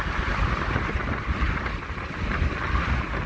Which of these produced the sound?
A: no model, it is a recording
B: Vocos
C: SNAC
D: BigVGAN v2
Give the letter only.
A